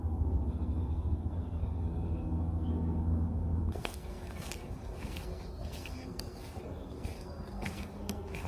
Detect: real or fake fake